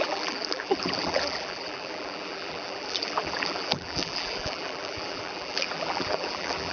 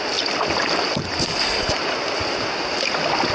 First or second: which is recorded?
second